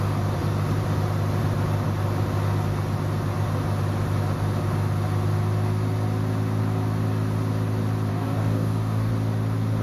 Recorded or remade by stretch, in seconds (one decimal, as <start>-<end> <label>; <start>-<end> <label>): 0.0-8.1 recorded; 8.1-9.1 remade; 9.1-9.8 recorded